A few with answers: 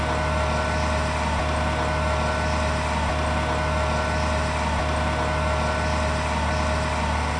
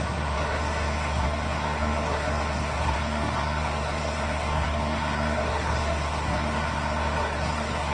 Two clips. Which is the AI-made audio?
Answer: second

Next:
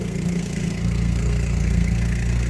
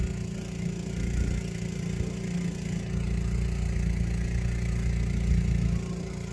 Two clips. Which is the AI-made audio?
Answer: first